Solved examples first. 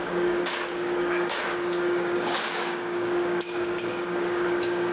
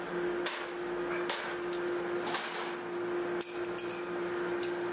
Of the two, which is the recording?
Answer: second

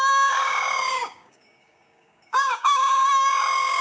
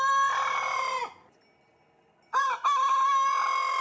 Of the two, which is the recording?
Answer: second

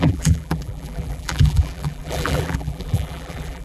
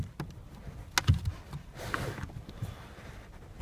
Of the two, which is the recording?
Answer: second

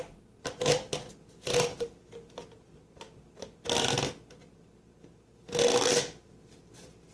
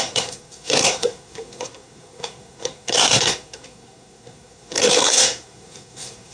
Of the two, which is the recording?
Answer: first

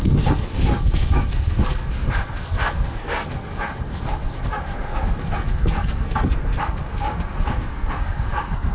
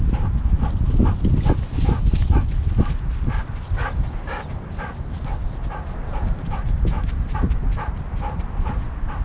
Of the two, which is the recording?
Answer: second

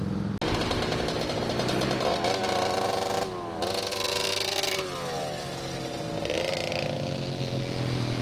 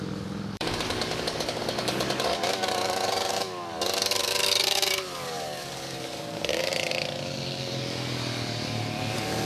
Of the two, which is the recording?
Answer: first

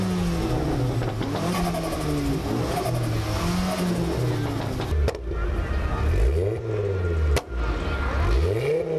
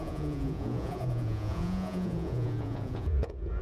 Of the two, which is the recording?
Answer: first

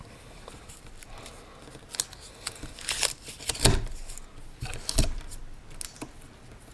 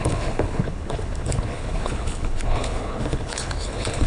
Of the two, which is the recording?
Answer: first